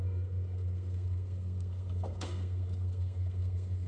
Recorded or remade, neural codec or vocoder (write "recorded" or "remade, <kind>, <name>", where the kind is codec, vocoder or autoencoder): remade, codec, SNAC